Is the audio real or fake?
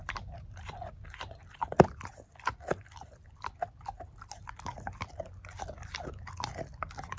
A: real